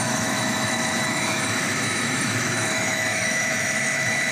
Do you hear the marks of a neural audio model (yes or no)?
yes